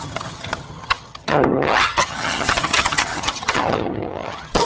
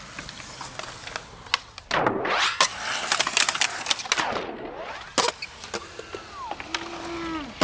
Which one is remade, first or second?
first